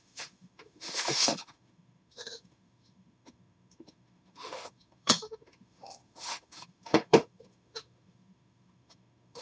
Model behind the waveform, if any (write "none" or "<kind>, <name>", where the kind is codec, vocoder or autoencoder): autoencoder, DAC-VAE